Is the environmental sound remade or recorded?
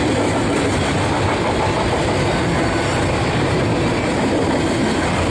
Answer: recorded